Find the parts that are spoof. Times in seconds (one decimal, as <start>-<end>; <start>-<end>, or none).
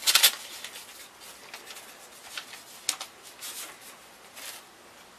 none